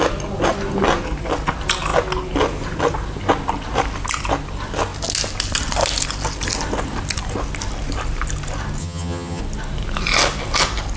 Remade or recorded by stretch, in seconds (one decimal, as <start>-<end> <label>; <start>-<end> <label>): 0.0-8.8 recorded; 8.8-9.4 remade; 9.4-11.0 recorded